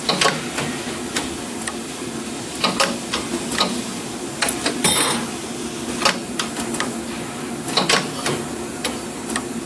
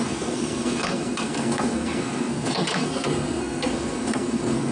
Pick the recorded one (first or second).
first